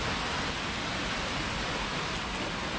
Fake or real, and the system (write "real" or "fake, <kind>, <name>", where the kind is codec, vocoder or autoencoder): real